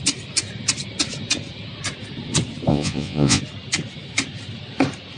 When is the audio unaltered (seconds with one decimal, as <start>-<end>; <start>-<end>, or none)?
0.0-2.7; 3.4-5.2